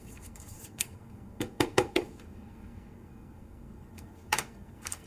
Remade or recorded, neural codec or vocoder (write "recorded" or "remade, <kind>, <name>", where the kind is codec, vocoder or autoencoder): remade, codec, SNAC